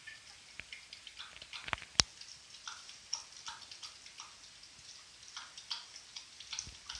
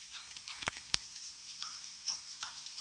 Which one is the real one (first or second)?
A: first